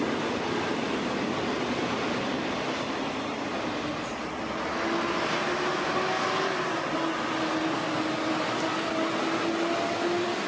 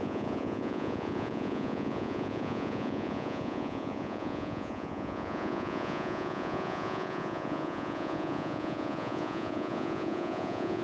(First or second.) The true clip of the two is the first